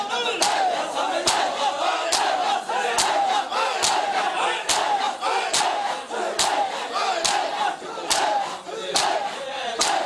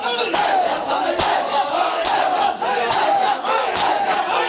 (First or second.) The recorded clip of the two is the first